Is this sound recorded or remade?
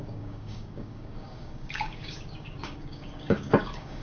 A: remade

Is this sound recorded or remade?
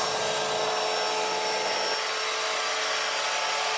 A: recorded